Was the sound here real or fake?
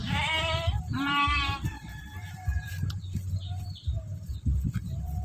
fake